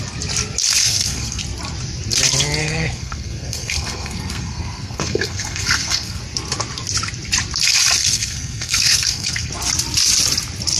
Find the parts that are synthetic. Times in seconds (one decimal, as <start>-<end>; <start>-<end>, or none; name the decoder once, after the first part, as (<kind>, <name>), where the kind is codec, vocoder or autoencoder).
0.8-1.4 (codec, SNAC); 2.6-6.2; 8.0-9.5

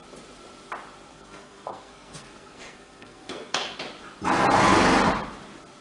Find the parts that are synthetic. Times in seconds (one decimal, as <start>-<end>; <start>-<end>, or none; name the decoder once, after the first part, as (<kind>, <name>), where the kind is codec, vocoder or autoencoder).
1.1-3.8 (codec, SNAC)

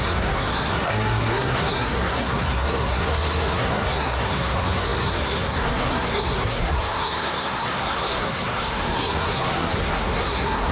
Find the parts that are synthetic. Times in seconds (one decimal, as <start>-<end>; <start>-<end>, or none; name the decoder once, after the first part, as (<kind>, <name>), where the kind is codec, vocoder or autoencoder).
0.0-10.7 (codec, SNAC)

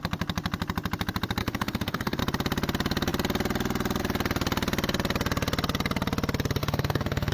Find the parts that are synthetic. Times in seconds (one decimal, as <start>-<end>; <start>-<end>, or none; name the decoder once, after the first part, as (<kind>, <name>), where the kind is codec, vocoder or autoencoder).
1.4-2.2 (codec, SNAC); 6.6-7.3

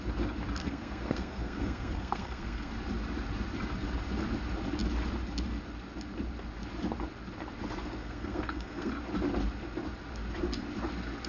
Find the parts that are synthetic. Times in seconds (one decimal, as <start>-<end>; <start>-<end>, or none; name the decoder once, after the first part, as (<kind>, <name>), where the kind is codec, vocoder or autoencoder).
0.6-2.7 (codec, SNAC); 8.0-8.9

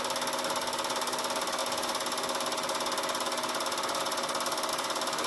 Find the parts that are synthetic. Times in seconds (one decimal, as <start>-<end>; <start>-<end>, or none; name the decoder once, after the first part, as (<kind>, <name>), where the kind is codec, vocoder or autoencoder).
none

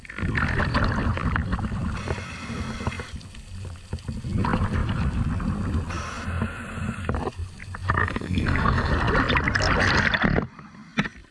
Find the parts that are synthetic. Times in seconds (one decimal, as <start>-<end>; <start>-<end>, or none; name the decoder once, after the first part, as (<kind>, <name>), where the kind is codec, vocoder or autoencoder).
8.0-8.9 (codec, SNAC)